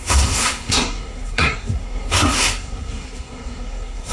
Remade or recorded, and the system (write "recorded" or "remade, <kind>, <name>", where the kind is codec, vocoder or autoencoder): remade, codec, SNAC